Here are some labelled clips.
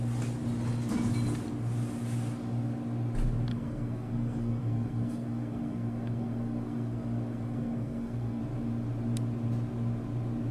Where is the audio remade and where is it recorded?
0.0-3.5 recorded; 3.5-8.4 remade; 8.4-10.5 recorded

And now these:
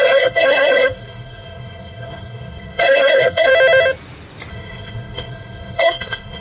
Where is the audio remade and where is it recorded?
0.0-3.5 remade; 3.5-4.5 recorded; 4.5-6.4 remade

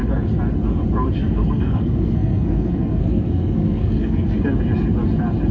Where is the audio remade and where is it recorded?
0.0-1.2 recorded; 1.2-4.4 remade; 4.4-5.5 recorded

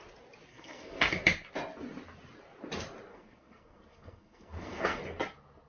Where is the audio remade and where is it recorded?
0.0-0.5 recorded; 0.5-1.1 remade; 1.1-3.1 recorded; 3.1-5.0 remade; 5.0-5.7 recorded